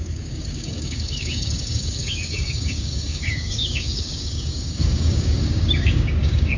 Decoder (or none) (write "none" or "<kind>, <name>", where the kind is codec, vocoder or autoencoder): codec, DAC